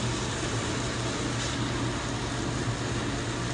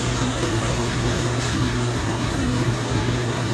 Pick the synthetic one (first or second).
second